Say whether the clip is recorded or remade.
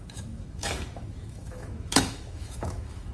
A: remade